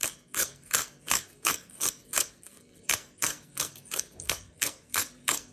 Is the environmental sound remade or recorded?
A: remade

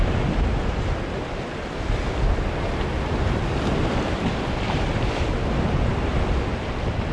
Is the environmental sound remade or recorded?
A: recorded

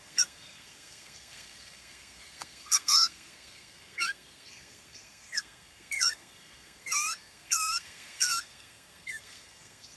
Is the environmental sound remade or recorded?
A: remade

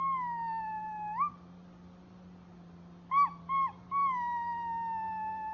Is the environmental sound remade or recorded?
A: recorded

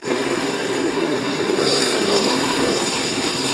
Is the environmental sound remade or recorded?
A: remade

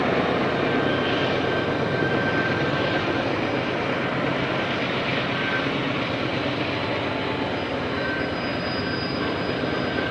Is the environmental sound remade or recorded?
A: recorded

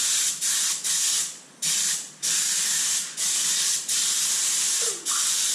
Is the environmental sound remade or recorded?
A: recorded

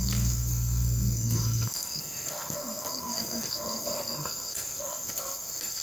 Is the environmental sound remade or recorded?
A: remade